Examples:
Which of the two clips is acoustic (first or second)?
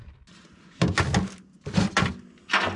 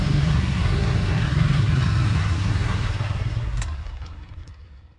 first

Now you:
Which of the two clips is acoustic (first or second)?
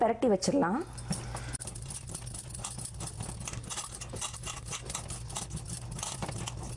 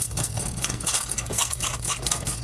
first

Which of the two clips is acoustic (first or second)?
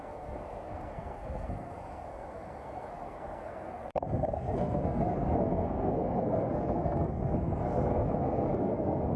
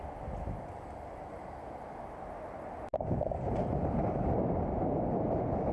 second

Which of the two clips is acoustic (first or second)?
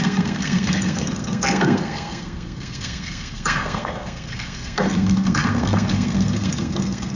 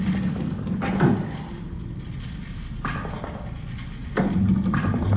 second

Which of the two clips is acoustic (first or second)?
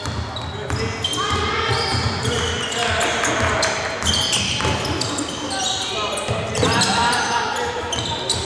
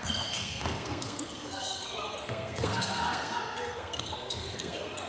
first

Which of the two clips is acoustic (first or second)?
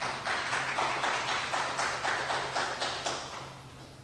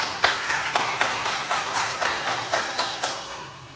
first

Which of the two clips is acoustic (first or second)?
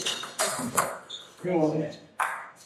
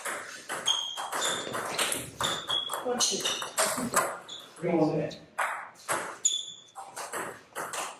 second